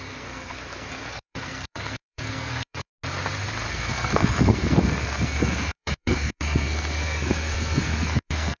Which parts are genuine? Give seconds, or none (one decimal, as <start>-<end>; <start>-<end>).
2.9-3.7